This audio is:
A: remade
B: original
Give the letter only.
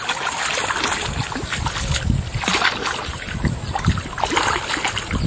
B